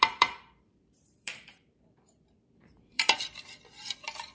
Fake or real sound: fake